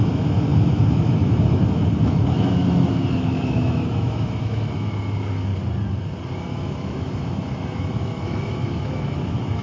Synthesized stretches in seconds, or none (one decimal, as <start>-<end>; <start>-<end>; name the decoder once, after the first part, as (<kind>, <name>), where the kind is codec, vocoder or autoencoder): 0.0-5.5 (autoencoder, DAC-VAE); 6.4-9.6